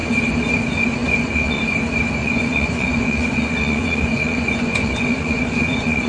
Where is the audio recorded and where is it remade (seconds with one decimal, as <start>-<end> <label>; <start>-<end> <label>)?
0.0-1.0 recorded; 1.0-1.6 remade; 1.6-2.2 recorded; 2.2-6.1 remade